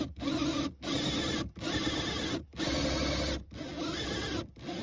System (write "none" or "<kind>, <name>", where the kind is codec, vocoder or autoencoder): none